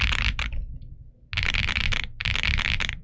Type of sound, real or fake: real